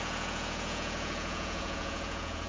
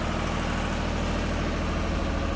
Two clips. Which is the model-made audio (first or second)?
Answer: first